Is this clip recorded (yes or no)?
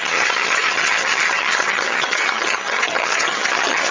no